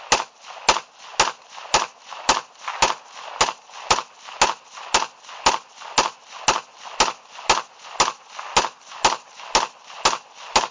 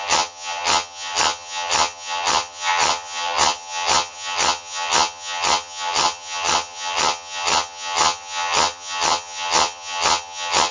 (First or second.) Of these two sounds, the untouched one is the first